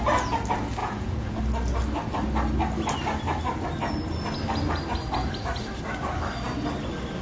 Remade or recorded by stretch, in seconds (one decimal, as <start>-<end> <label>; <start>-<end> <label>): 0.0-0.8 recorded; 0.8-1.4 remade; 1.4-7.2 recorded